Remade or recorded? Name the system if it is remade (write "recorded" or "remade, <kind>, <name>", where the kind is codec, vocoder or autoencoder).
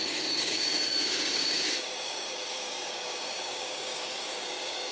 remade, codec, DAC